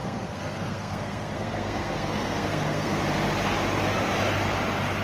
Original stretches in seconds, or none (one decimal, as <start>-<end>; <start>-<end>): 3.0-5.0